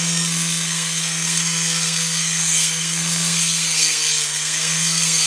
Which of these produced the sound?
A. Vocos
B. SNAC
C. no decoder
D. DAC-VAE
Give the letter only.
B